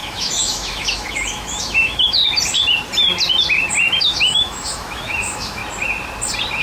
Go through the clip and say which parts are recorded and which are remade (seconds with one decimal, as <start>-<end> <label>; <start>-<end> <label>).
0.0-2.2 remade; 2.2-4.0 recorded; 4.0-5.6 remade; 5.6-6.6 recorded